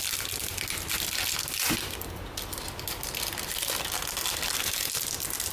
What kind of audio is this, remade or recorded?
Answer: recorded